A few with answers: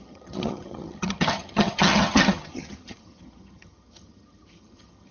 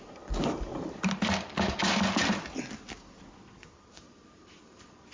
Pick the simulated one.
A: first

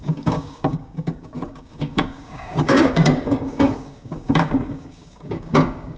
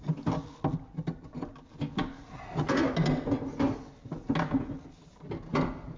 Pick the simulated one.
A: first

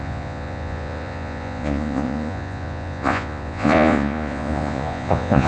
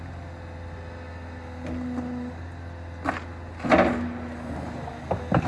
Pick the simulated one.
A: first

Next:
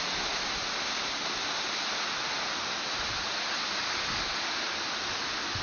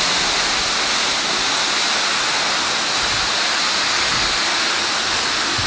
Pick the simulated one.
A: first